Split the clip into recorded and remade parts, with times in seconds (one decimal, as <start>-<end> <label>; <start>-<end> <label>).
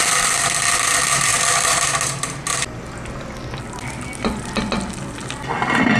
0.0-6.0 recorded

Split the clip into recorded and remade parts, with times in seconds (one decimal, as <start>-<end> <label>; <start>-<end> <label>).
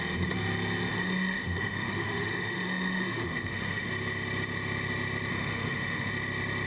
0.0-0.9 recorded; 0.9-3.9 remade; 3.9-5.3 recorded; 5.3-6.1 remade; 6.1-6.7 recorded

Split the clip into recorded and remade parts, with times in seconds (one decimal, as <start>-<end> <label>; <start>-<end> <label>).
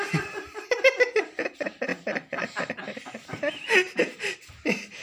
0.0-1.9 remade; 1.9-4.0 recorded; 4.0-5.0 remade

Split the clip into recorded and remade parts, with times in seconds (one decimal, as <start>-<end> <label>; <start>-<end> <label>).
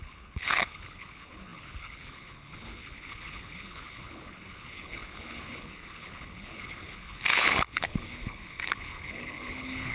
0.0-9.9 remade